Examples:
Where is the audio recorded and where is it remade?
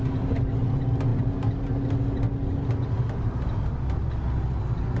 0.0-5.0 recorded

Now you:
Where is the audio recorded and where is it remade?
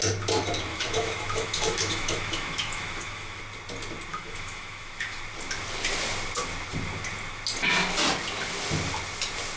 0.0-0.7 recorded; 0.7-3.4 remade; 3.4-4.1 recorded; 4.1-5.2 remade; 5.2-9.6 recorded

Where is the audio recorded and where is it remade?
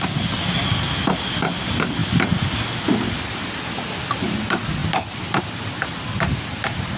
0.0-7.0 recorded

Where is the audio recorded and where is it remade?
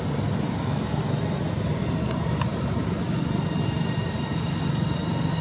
0.0-5.4 recorded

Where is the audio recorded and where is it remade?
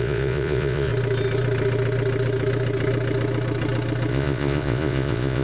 0.0-0.9 remade; 0.9-4.1 recorded; 4.1-5.4 remade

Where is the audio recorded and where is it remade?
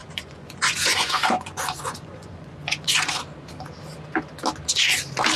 0.0-3.0 remade; 3.0-5.4 recorded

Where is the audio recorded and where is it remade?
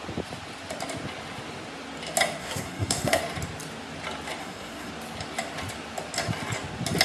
0.0-2.4 recorded; 2.4-3.2 remade; 3.2-4.4 recorded; 4.4-4.9 remade; 4.9-7.0 recorded